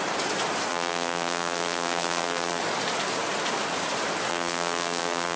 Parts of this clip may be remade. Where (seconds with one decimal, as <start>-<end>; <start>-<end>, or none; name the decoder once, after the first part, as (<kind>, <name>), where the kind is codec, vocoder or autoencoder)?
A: 0.7-2.6 (vocoder, BigVGAN v2); 4.3-5.4